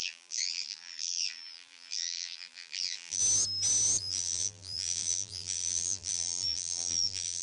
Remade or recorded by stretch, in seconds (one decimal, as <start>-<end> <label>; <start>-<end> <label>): 0.0-3.2 remade; 3.2-4.0 recorded; 4.0-7.4 remade